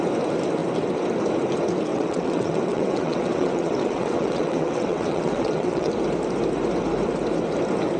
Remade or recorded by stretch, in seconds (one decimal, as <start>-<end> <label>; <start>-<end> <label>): 0.0-1.9 recorded; 1.9-5.9 remade; 5.9-8.0 recorded

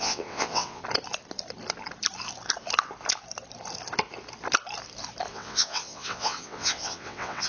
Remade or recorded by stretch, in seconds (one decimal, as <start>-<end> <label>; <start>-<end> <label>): 0.0-0.8 remade; 0.8-5.3 recorded; 5.3-7.5 remade

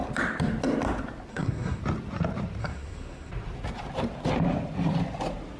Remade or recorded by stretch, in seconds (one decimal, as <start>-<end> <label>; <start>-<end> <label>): 0.0-1.3 recorded; 1.3-1.8 remade; 1.8-2.6 recorded; 2.6-3.3 remade; 3.3-5.6 recorded

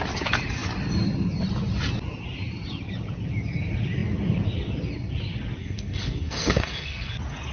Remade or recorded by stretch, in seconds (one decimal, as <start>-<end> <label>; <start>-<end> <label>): 0.0-5.6 recorded; 5.6-7.1 remade; 7.1-7.5 recorded

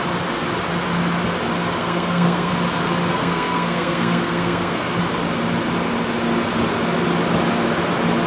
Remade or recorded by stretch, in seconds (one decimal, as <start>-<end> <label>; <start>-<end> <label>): 0.0-1.8 recorded; 1.8-2.5 remade; 2.5-3.1 recorded; 3.1-5.0 remade; 5.0-8.3 recorded

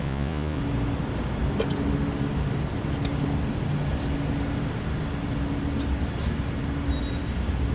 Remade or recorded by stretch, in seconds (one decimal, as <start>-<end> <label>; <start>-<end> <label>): 0.0-0.6 remade; 0.6-7.7 recorded